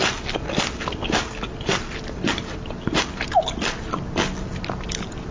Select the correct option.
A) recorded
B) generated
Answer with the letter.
A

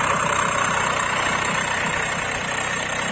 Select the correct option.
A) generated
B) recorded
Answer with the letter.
B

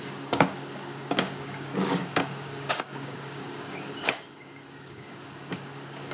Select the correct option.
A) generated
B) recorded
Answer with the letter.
A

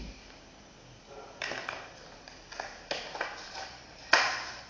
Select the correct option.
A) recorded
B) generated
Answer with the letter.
A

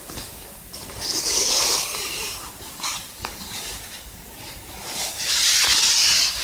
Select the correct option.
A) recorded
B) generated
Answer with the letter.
B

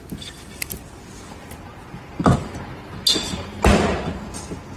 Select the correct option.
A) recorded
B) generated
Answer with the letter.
A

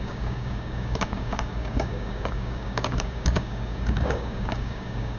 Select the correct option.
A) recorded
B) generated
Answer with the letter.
B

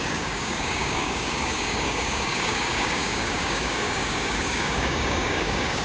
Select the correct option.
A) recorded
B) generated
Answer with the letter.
B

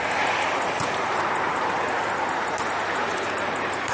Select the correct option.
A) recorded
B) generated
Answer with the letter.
A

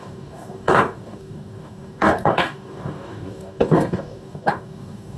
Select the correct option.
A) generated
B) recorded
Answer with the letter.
A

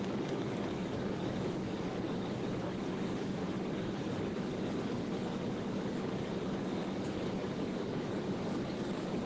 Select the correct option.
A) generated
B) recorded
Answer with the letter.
A